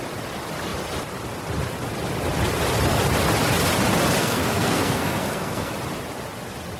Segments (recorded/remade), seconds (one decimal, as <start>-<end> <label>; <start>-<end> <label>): 0.0-4.2 recorded; 4.2-5.7 remade; 5.7-6.8 recorded